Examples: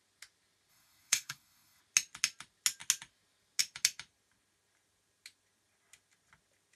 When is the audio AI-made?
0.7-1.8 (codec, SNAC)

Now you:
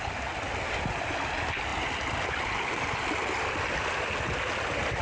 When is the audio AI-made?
none